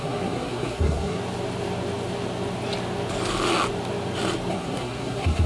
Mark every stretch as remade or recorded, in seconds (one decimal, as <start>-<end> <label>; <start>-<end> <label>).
0.0-1.2 remade; 1.2-4.5 recorded; 4.5-5.5 remade